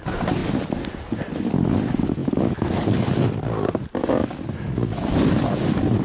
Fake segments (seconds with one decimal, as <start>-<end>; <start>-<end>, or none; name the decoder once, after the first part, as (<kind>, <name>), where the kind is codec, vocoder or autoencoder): none